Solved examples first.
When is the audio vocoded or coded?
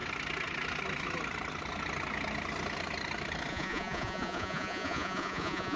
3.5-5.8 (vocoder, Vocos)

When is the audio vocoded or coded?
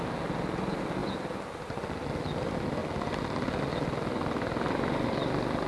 none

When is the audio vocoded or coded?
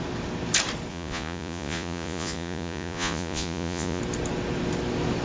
0.9-4.0 (vocoder, Vocos)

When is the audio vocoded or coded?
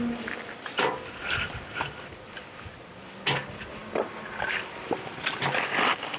none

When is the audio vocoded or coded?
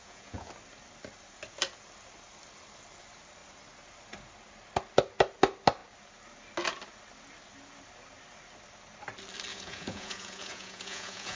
0.0-0.5 (vocoder, Vocos); 9.5-11.4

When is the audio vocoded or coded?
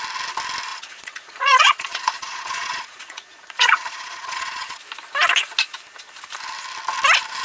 0.7-4.8 (vocoder, Vocos)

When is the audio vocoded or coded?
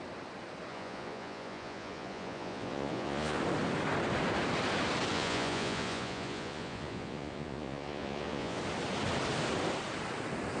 0.7-3.4 (vocoder, Vocos); 5.1-8.6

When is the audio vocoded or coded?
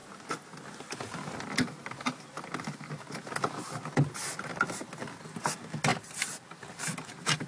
none